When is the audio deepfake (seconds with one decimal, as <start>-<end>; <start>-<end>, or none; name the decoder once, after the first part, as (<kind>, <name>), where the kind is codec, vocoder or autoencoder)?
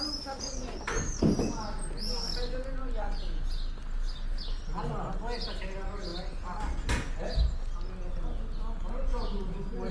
none